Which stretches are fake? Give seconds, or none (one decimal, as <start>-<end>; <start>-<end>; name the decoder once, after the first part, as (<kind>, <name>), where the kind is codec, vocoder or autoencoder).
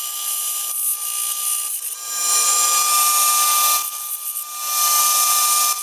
none